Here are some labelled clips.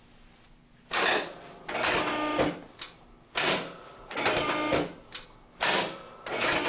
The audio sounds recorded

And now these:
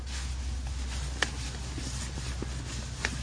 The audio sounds recorded